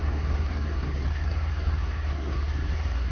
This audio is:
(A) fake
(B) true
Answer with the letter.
A